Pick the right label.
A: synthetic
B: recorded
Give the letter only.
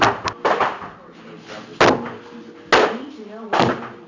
B